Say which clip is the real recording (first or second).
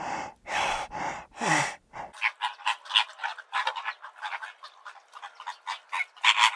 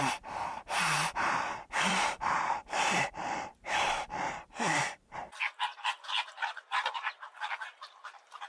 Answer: first